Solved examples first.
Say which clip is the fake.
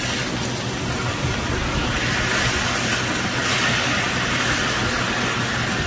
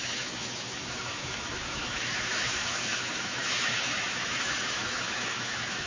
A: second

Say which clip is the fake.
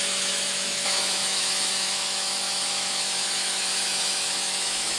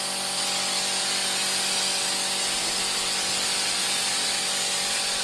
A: first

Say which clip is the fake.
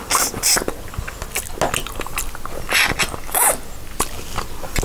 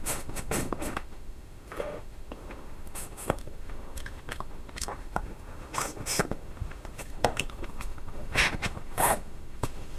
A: second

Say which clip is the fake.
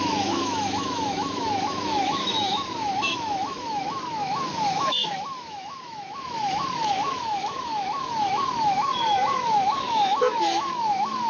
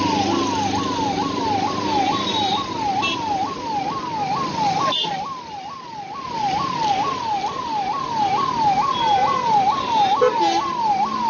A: first